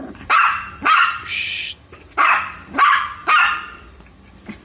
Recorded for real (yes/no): no